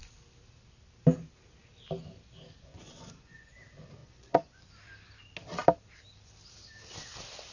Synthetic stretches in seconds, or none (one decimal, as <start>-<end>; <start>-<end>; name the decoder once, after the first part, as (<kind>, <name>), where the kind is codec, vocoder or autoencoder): 2.7-3.5 (vocoder, Vocos); 4.0-4.6

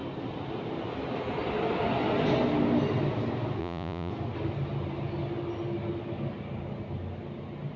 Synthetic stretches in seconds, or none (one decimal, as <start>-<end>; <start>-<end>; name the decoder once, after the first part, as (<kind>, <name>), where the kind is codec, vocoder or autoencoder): 3.6-4.1 (vocoder, Vocos)

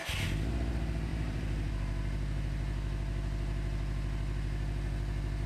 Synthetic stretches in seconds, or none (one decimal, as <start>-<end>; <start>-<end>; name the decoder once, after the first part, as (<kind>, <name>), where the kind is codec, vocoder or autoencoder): 1.1-1.7 (vocoder, BigVGAN v2)

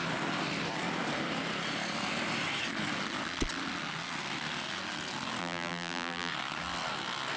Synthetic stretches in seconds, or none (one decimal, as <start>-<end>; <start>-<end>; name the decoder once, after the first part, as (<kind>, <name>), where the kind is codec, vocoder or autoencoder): 5.4-6.3 (vocoder, BigVGAN v2)

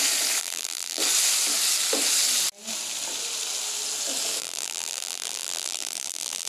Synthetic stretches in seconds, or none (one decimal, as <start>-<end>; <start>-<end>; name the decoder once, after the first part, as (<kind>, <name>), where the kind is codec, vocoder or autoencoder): 0.4-1.0 (vocoder, BigVGAN v2); 4.4-6.5